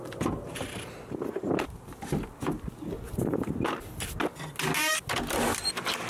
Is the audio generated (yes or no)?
no